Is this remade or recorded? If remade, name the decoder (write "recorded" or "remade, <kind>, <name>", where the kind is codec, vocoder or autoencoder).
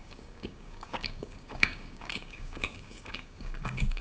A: remade, codec, DAC